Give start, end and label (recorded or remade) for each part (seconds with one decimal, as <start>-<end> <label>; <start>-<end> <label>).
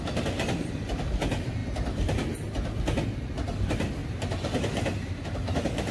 0.0-1.6 remade; 1.6-2.4 recorded; 2.4-4.0 remade; 4.0-5.5 recorded; 5.5-5.9 remade